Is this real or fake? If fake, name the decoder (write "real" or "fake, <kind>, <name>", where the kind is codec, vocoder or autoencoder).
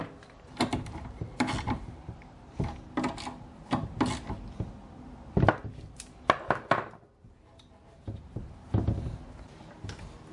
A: real